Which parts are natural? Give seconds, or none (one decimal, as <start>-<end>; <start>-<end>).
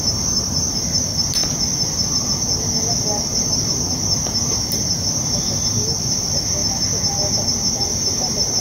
1.4-2.9; 6.6-7.8